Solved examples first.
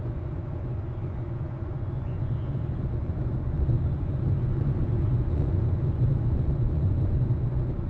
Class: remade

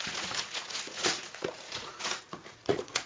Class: remade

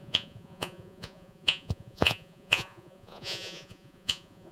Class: remade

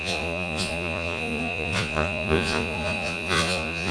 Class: remade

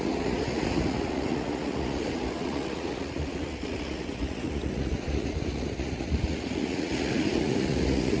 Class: remade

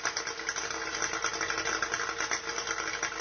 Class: recorded